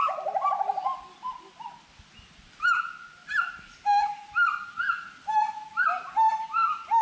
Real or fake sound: real